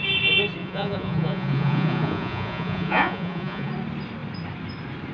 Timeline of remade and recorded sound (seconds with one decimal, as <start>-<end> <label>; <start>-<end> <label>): 0.0-0.6 recorded; 0.6-3.7 remade; 3.7-5.1 recorded